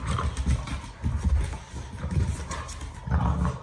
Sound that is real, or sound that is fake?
real